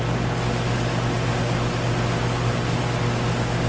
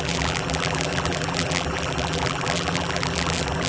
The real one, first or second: first